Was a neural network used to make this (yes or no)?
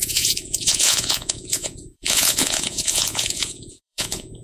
yes